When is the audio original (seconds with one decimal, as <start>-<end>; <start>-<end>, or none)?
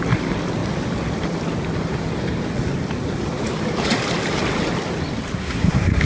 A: 0.0-5.4